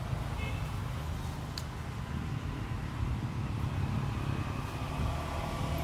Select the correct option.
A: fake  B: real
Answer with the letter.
B